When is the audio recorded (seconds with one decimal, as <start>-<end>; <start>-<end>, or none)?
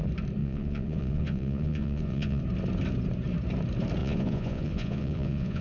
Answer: 0.0-0.4; 2.4-4.0